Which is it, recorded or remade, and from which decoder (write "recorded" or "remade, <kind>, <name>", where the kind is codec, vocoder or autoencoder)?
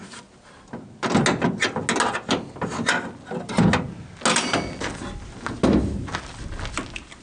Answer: recorded